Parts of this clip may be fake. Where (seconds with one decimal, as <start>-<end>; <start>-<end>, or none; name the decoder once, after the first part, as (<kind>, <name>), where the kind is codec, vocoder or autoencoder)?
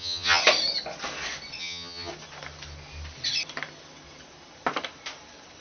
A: 0.0-0.4 (vocoder, HiFi-GAN); 1.6-2.1